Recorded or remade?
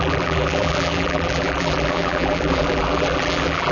remade